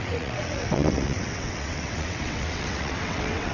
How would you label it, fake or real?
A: fake